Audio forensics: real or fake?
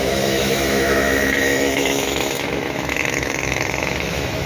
fake